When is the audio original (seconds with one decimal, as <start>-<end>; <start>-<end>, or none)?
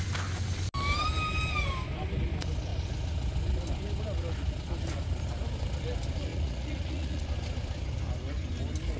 0.0-6.3; 7.2-9.0